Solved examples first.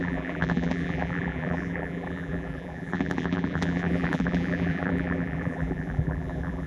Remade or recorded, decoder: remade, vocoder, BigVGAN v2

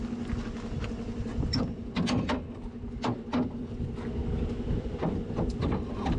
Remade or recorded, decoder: recorded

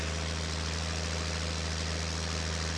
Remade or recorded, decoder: recorded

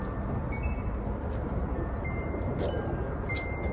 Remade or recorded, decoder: recorded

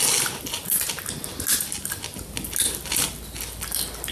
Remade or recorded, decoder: recorded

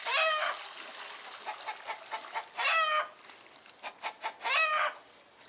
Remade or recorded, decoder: recorded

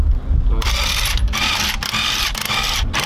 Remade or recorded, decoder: recorded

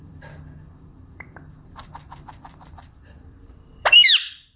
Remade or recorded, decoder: remade, vocoder, BigVGAN v2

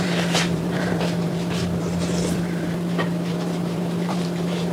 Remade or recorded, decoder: remade, vocoder, BigVGAN v2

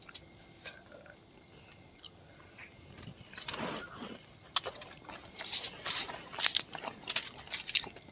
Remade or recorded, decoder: recorded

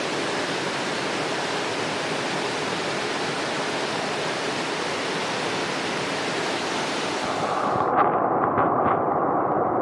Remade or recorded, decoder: recorded